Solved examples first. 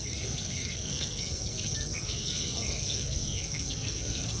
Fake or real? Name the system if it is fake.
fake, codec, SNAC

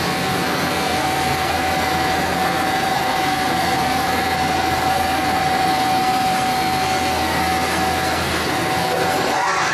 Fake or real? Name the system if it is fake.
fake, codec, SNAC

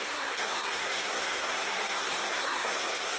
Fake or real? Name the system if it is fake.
fake, codec, SNAC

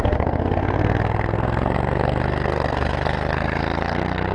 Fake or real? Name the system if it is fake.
fake, codec, SNAC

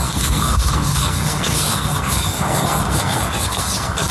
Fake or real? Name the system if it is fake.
fake, codec, SNAC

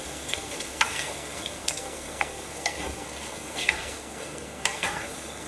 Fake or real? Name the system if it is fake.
fake, codec, SNAC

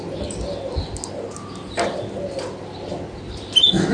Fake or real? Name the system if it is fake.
real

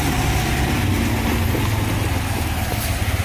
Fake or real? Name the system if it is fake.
real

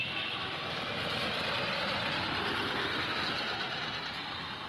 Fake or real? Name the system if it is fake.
real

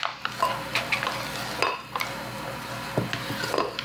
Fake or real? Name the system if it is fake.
real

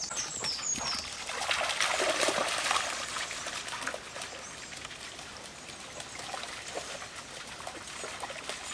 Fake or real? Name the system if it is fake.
real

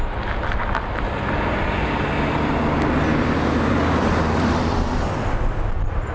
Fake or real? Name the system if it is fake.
real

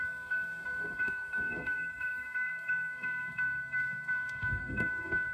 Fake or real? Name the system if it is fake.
fake, codec, SNAC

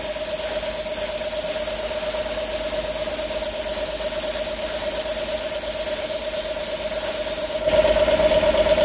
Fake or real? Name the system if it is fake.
real